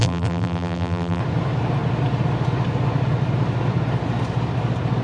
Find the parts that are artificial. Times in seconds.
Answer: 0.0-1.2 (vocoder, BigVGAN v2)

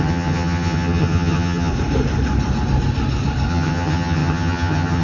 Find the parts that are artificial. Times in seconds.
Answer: 0.0-1.7 (vocoder, HiFi-GAN); 3.5-5.0

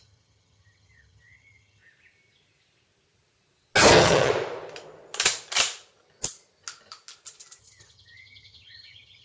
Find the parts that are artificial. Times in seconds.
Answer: 0.0-1.8 (vocoder, HiFi-GAN); 3.9-4.3; 7.6-9.2

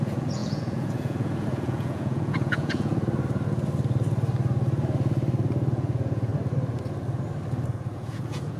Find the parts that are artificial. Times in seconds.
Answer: 0.0-2.9 (vocoder, Vocos); 5.7-6.3; 7.7-8.6

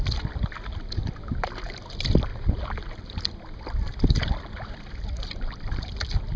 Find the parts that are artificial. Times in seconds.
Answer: none

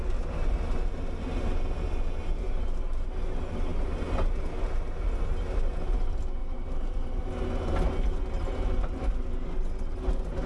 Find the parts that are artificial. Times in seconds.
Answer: 6.4-7.3 (vocoder, BigVGAN v2)

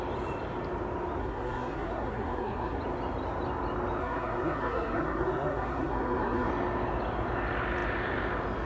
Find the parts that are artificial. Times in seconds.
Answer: 1.2-2.8 (codec, SNAC); 4.0-6.5

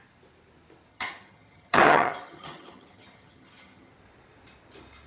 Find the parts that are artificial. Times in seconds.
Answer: 0.9-3.9 (vocoder, HiFi-GAN)